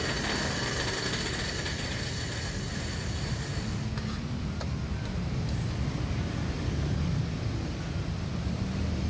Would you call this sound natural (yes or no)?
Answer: yes